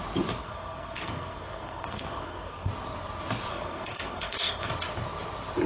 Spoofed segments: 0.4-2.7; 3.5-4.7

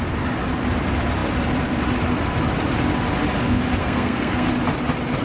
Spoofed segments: 3.8-4.5

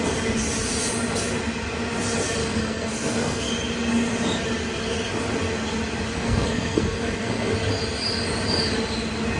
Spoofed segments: 2.4-3.5; 6.1-7.5

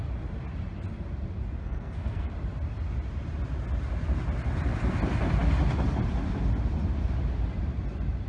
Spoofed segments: 1.6-2.3

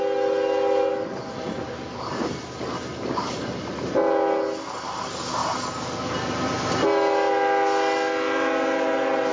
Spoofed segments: none